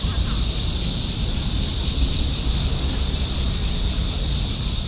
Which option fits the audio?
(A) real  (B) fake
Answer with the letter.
B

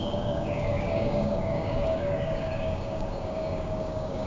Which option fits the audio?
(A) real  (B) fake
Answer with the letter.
B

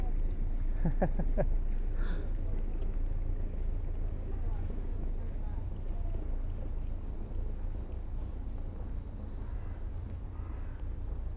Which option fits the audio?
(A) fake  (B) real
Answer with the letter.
B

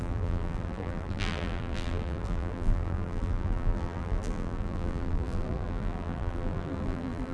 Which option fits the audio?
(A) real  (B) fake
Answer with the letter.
B